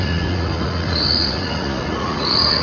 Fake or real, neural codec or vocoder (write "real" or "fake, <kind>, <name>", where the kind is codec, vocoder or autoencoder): fake, vocoder, Vocos